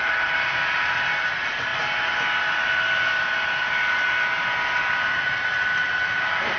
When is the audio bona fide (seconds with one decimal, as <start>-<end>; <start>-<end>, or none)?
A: 0.0-6.6